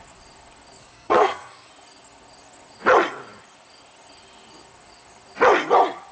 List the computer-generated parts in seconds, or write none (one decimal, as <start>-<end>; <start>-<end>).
0.8-1.7